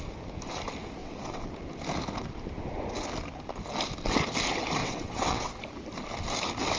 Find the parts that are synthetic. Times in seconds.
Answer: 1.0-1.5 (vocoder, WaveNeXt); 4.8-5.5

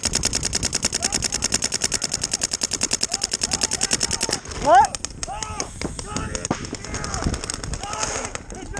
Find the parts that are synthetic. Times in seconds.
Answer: none

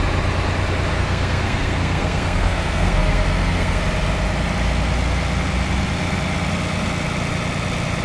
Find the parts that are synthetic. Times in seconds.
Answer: 0.9-3.8 (codec, SNAC)

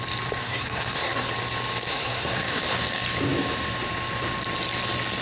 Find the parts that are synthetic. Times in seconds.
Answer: 0.4-1.3 (codec, SNAC); 1.9-2.6

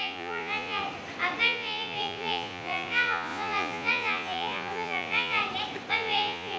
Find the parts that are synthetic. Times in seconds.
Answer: 0.0-0.8 (vocoder, Vocos); 1.4-5.4; 5.9-6.6

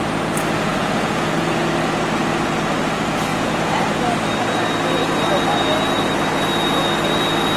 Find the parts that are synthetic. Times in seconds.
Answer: 0.7-1.5 (vocoder, Vocos); 3.3-3.8

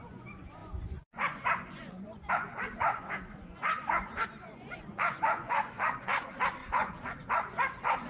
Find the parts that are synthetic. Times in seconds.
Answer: 0.0-8.1 (vocoder, Vocos)

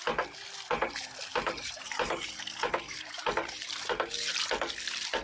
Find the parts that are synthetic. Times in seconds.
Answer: 1.3-4.1 (vocoder, BigVGAN v2)